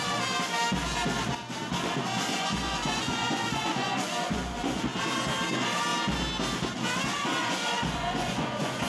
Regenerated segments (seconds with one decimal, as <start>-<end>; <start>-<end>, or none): 2.3-4.8; 7.4-8.9